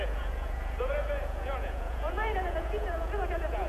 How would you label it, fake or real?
fake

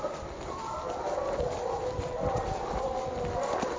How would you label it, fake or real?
real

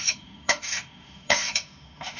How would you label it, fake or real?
fake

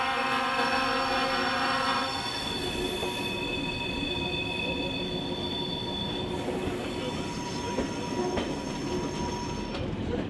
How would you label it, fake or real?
real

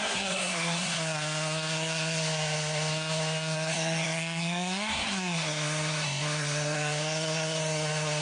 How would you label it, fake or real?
fake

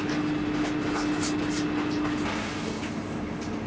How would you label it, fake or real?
real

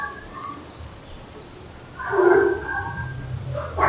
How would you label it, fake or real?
real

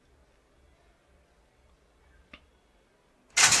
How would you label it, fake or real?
real